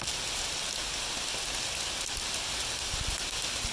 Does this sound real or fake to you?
real